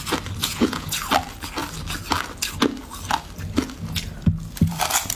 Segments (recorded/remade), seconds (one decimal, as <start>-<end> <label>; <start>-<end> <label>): 0.0-0.4 recorded; 0.4-0.9 remade; 0.9-5.2 recorded